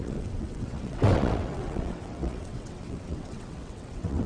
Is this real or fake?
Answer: fake